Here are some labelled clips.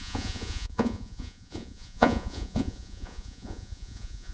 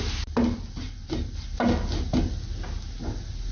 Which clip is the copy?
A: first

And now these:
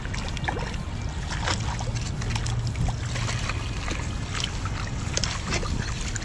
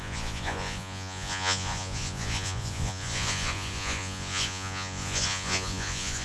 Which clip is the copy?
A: second